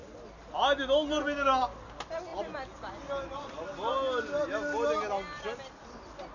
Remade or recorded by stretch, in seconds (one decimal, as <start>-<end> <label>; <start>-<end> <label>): 0.0-6.3 recorded